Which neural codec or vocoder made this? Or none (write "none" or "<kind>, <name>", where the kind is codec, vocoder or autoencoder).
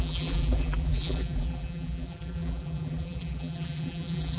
vocoder, BigVGAN v2